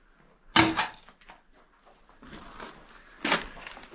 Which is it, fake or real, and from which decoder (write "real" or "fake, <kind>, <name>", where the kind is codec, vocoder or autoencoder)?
real